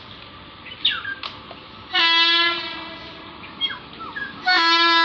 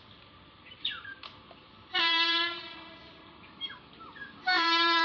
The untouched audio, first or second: first